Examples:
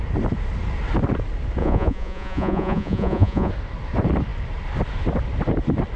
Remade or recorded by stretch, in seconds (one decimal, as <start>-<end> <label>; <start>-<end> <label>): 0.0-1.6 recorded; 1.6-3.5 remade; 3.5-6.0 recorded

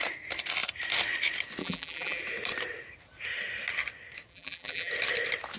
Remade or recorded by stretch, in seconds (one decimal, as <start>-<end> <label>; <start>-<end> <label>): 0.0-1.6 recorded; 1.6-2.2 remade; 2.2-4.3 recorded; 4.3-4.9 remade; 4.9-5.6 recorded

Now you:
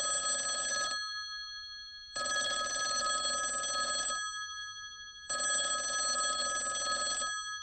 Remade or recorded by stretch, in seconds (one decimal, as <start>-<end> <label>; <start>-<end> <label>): 0.0-0.7 recorded; 0.7-3.1 remade; 3.1-7.6 recorded

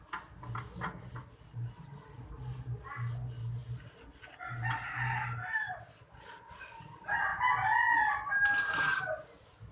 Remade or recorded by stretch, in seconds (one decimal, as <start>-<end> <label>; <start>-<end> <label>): 0.0-9.7 recorded

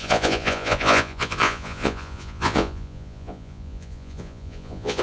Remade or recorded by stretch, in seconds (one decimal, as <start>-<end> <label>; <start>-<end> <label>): 0.0-5.0 remade

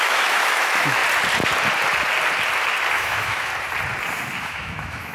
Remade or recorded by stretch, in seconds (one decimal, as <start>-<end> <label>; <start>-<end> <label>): 0.0-1.0 remade; 1.0-2.9 recorded; 2.9-3.5 remade; 3.5-4.4 recorded; 4.4-5.1 remade

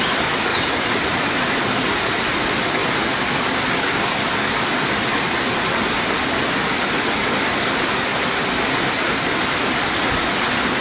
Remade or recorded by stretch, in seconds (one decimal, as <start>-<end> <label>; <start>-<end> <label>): 0.0-0.5 recorded; 0.5-1.1 remade; 1.1-10.8 recorded

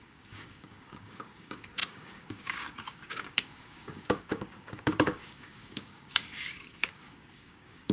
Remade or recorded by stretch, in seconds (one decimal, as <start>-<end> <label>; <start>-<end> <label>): 0.0-7.9 remade